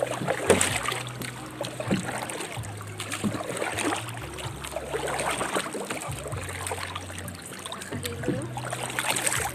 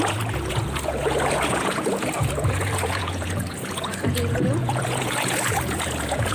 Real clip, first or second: first